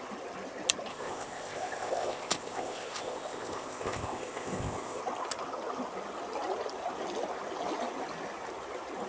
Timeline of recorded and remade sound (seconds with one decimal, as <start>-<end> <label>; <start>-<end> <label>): 0.0-0.9 recorded; 0.9-5.0 remade; 5.0-9.1 recorded